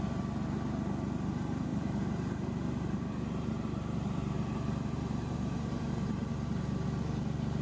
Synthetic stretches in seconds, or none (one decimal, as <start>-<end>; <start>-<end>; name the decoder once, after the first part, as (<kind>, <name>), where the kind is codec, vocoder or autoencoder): 1.7-6.3 (vocoder, BigVGAN v2)